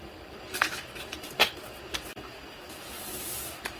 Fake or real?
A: real